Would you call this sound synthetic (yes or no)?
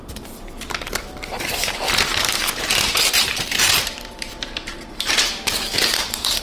yes